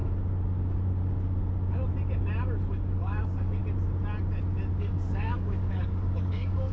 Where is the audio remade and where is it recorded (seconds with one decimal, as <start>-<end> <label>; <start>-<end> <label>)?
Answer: 0.0-2.7 recorded; 2.7-3.6 remade; 3.6-4.8 recorded; 4.8-6.7 remade